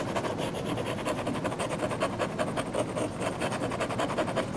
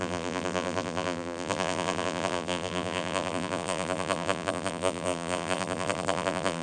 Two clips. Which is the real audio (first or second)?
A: first